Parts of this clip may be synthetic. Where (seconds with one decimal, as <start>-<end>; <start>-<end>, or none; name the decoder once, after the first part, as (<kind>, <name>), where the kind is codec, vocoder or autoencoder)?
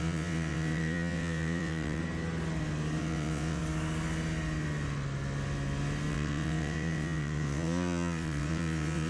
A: 0.0-2.0 (vocoder, WaveNeXt); 3.0-3.6; 6.1-9.1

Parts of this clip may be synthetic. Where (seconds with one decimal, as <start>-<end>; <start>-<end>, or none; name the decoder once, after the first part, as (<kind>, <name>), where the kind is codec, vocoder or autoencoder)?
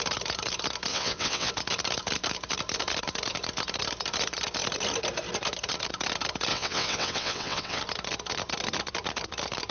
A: 0.9-1.5 (vocoder, WaveNeXt); 6.5-7.8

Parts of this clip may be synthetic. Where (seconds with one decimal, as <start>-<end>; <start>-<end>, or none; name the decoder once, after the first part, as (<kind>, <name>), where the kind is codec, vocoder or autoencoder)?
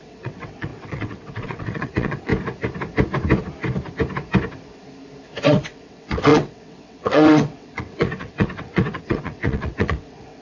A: 0.0-2.3 (vocoder, WaveNeXt); 5.5-10.4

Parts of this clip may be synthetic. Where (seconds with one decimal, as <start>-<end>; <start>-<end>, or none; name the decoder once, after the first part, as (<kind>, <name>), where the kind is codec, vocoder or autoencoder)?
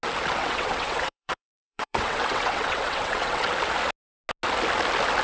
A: 0.4-3.5 (vocoder, WaveNeXt)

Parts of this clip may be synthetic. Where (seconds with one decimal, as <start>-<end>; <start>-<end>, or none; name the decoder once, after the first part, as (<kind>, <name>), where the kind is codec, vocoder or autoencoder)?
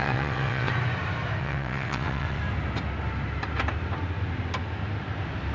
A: 0.0-0.7 (vocoder, WaveNeXt); 1.4-2.4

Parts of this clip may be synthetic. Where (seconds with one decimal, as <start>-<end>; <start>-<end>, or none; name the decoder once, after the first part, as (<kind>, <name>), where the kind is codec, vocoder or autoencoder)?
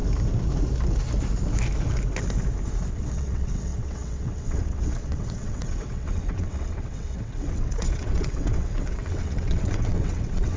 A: 2.9-10.6 (vocoder, WaveNeXt)